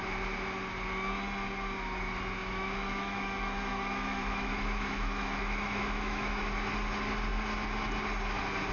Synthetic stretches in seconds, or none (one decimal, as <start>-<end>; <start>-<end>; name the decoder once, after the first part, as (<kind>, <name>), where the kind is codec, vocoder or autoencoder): 2.4-6.5 (autoencoder, DAC-VAE)